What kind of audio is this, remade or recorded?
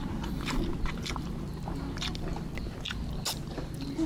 recorded